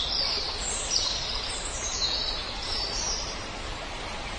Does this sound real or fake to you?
fake